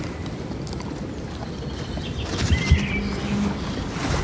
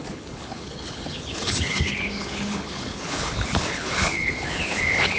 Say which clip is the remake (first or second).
second